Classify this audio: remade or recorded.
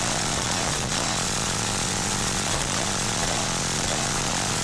remade